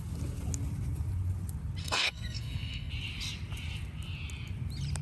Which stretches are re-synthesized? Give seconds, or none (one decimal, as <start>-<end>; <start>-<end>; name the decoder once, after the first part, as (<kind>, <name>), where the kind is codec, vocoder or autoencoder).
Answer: 1.8-2.9 (codec, SNAC)